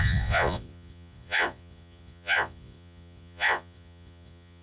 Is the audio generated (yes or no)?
yes